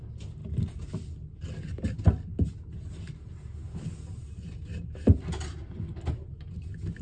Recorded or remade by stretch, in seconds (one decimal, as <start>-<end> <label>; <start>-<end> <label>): 0.0-0.4 recorded; 0.4-1.1 remade; 1.1-7.0 recorded

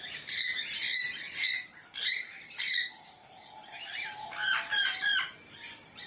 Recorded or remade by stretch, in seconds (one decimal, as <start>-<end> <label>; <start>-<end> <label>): 0.0-6.1 remade

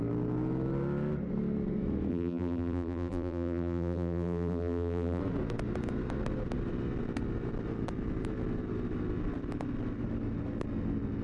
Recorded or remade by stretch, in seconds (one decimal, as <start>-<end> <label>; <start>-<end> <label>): 0.0-2.1 recorded; 2.1-5.2 remade; 5.2-11.2 recorded